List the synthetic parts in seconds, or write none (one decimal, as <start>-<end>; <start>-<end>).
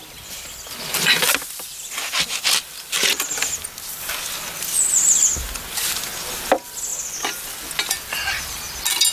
none